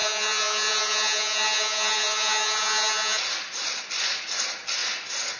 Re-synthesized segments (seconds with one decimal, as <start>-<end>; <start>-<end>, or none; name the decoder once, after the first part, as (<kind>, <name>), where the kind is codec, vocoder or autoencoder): 0.0-3.2 (vocoder, Vocos)